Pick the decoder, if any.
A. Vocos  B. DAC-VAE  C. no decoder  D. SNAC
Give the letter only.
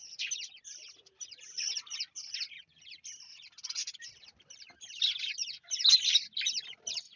C